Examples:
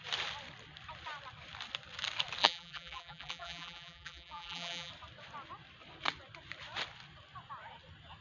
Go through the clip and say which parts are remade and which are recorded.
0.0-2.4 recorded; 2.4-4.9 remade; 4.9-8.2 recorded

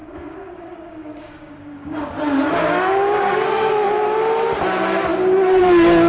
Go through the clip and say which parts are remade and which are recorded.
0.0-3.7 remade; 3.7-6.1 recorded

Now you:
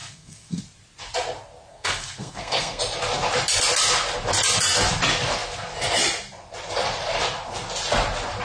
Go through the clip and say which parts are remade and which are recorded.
0.0-0.6 remade; 0.6-1.7 recorded; 1.7-2.8 remade; 2.8-8.4 recorded

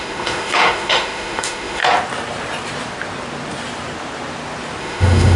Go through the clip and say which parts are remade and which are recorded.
0.0-1.8 remade; 1.8-4.8 recorded; 4.8-5.4 remade